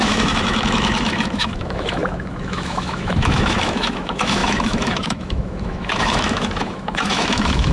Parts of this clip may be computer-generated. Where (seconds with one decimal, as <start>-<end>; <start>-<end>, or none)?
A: 0.0-7.7